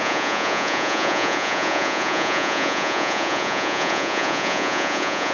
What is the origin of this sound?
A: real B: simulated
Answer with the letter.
B